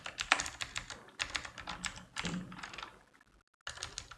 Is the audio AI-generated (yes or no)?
no